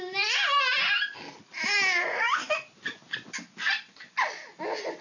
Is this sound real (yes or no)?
yes